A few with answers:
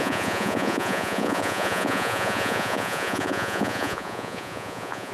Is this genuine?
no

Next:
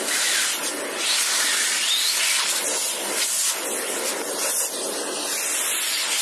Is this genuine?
yes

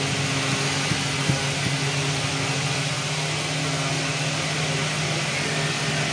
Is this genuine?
yes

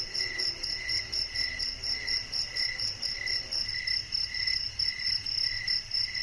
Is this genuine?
yes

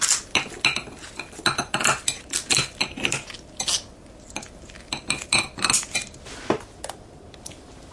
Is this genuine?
yes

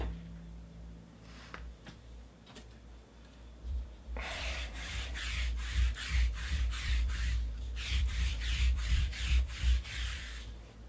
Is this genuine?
no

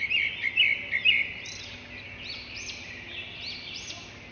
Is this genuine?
yes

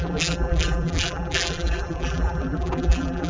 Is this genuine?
no